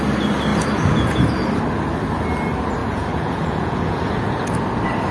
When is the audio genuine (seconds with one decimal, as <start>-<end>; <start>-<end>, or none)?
0.0-0.5; 1.5-2.8; 4.6-5.1